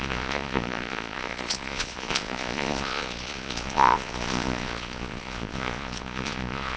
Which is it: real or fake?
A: fake